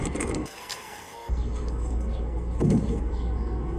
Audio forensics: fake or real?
fake